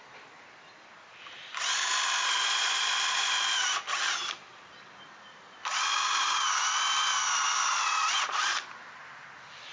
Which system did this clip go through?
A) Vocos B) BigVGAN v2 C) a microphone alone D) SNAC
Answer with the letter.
C